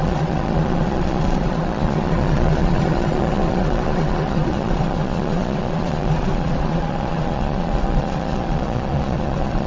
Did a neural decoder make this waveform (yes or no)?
yes